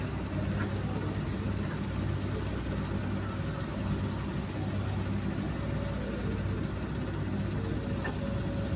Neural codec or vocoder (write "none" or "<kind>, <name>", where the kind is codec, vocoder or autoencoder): none